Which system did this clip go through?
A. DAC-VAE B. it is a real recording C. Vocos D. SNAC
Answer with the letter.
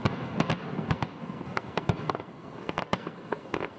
D